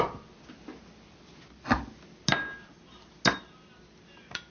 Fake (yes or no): no